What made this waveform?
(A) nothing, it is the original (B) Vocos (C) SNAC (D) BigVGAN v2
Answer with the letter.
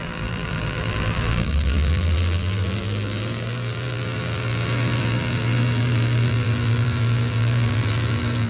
D